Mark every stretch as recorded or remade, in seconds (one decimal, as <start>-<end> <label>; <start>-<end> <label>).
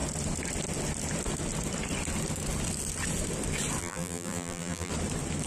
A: 0.0-3.8 recorded; 3.8-4.9 remade; 4.9-5.5 recorded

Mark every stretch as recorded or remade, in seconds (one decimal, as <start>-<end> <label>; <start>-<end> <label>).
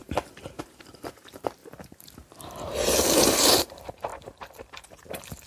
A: 0.0-1.6 remade; 1.6-3.3 recorded; 3.3-5.5 remade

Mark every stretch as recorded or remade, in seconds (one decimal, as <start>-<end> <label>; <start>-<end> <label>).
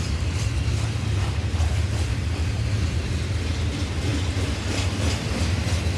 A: 0.0-2.1 recorded; 2.1-3.1 remade; 3.1-6.0 recorded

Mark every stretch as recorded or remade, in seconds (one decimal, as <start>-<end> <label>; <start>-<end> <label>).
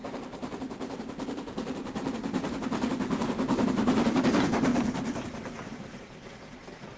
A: 0.0-4.2 remade; 4.2-4.7 recorded; 4.7-5.7 remade; 5.7-7.0 recorded